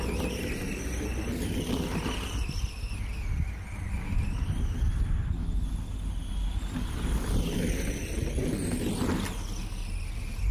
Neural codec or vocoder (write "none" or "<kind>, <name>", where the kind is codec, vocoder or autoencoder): none